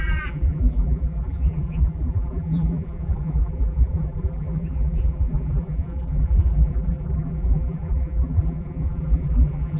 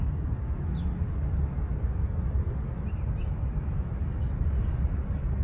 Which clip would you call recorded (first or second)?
second